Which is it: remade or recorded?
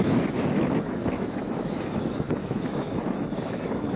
remade